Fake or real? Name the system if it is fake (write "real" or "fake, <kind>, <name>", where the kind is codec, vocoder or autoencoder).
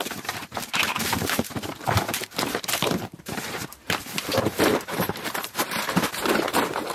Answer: fake, vocoder, BigVGAN v2